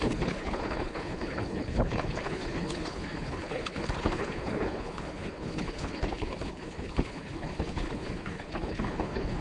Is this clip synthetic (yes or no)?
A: yes